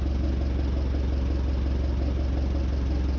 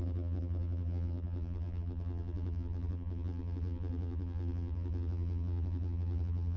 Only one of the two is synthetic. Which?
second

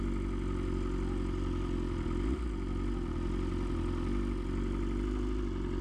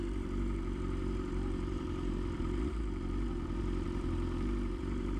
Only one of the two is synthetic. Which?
second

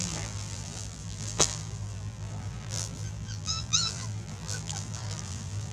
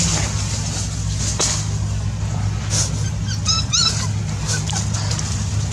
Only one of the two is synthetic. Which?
first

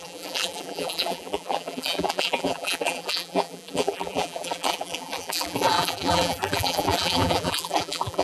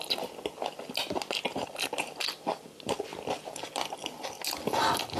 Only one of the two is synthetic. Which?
first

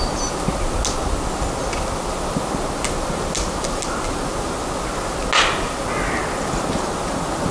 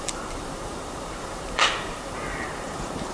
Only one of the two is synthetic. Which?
second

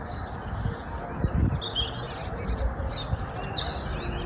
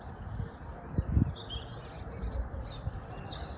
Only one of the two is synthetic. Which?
second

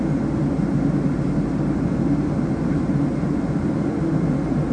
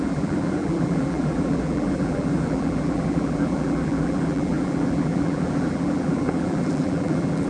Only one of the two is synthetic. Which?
second